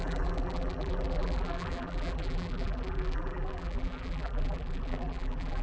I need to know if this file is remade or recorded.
remade